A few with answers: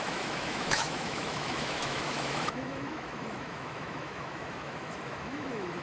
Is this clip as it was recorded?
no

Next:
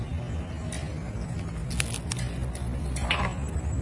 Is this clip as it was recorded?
yes